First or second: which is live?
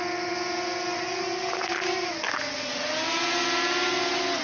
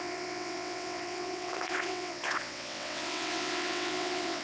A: first